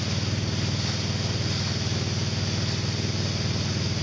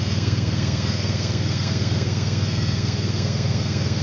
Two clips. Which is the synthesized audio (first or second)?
second